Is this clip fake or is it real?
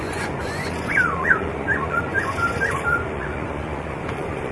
fake